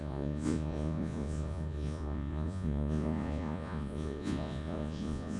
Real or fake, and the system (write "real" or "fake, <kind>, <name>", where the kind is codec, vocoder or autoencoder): fake, vocoder, Vocos